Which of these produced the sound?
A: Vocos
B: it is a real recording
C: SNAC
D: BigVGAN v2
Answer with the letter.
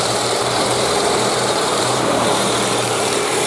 D